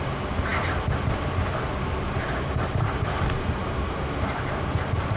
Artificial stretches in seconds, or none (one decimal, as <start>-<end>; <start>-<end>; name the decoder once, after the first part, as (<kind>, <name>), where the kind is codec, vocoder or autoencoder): none